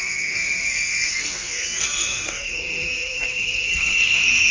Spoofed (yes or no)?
yes